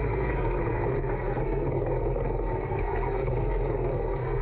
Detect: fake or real fake